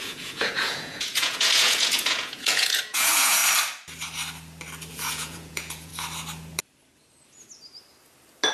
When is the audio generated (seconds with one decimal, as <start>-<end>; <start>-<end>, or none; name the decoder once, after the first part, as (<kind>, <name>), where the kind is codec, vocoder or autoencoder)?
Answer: 0.0-3.4 (vocoder, Vocos); 4.9-5.9